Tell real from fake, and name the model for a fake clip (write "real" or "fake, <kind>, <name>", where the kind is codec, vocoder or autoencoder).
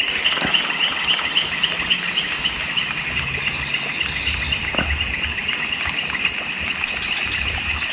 real